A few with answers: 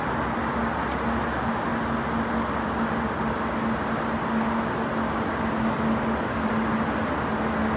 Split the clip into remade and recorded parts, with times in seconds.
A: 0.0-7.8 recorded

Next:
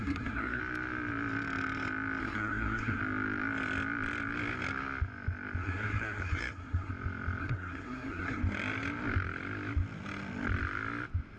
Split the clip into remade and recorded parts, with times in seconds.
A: 0.0-0.6 remade; 0.6-2.2 recorded; 2.2-3.0 remade; 3.0-5.6 recorded; 5.6-6.9 remade; 6.9-7.4 recorded; 7.4-8.4 remade; 8.4-11.4 recorded

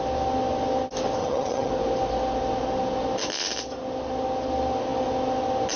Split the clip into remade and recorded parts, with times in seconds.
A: 0.0-1.2 recorded; 1.2-1.7 remade; 1.7-5.8 recorded

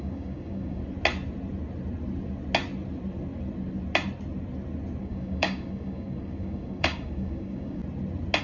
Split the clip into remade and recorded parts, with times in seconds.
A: 0.0-0.8 remade; 0.8-5.0 recorded; 5.0-7.8 remade; 7.8-8.4 recorded

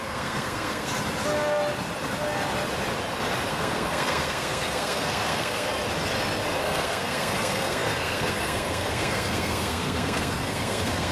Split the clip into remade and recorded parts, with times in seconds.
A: 0.0-0.9 remade; 0.9-3.5 recorded; 3.5-5.7 remade; 5.7-6.6 recorded; 6.6-11.1 remade

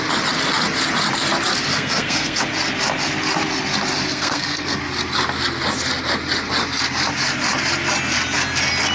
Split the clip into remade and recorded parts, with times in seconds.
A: 0.0-1.7 recorded; 1.7-2.4 remade; 2.4-4.1 recorded; 4.1-4.8 remade; 4.8-8.9 recorded

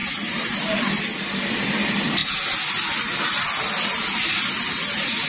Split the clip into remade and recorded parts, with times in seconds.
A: 0.0-0.9 remade; 0.9-5.3 recorded